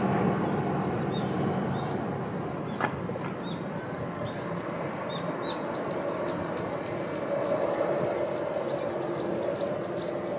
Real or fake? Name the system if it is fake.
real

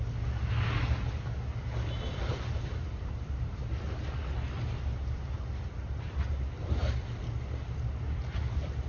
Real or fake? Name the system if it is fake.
real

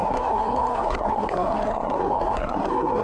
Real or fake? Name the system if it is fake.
fake, codec, SNAC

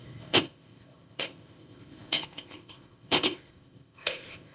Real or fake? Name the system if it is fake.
fake, codec, ZipCodec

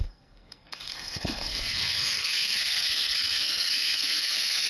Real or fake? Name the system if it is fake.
fake, codec, SNAC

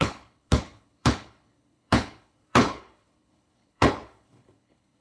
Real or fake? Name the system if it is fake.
fake, codec, HILCodec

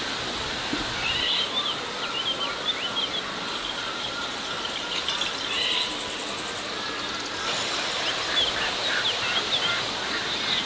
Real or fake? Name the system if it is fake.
real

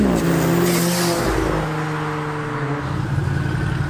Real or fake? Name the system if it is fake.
real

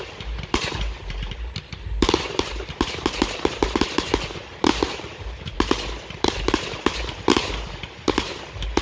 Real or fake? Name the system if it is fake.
fake, vocoder, BigVGAN v2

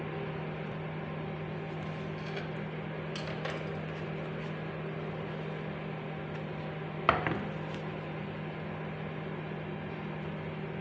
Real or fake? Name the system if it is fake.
real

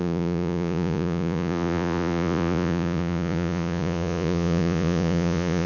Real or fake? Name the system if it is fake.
fake, vocoder, Vocos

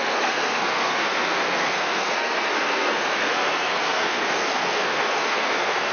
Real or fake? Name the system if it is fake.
fake, codec, SNAC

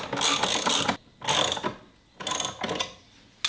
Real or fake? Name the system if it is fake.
real